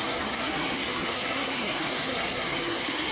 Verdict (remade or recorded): remade